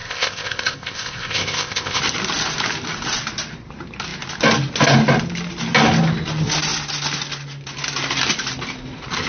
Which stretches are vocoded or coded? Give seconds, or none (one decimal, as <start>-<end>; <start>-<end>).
0.0-2.0